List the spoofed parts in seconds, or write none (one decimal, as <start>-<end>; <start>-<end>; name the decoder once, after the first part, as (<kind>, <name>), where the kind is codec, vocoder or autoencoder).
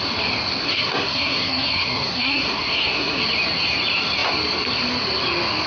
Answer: 0.6-3.2 (codec, SNAC)